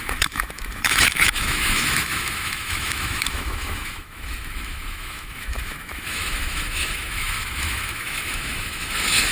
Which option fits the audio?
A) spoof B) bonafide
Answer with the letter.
A